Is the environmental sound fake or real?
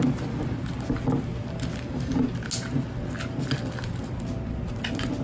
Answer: real